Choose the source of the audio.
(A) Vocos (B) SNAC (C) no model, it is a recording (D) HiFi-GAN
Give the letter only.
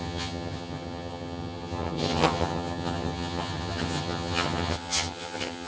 D